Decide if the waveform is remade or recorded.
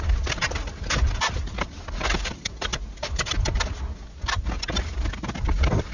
recorded